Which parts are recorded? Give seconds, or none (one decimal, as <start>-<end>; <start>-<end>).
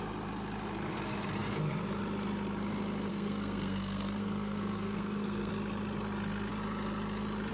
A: 0.0-3.1; 5.5-7.5